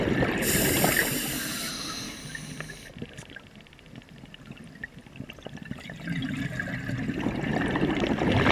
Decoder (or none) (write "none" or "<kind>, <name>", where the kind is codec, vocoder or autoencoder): none